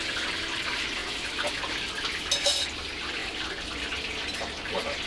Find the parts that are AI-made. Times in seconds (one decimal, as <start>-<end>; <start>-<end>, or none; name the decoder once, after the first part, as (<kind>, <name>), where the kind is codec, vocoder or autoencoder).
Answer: none